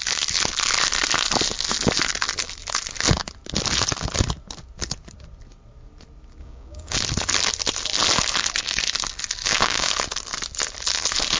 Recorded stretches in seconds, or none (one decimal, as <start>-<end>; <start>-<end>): 0.0-6.4; 7.0-9.4; 9.9-11.4